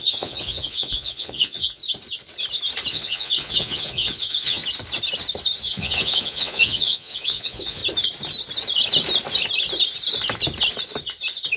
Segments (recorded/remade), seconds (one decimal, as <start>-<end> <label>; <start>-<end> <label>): 0.0-1.8 remade; 1.8-2.9 recorded; 2.9-4.6 remade; 4.6-5.6 recorded; 5.6-7.8 remade; 7.8-11.6 recorded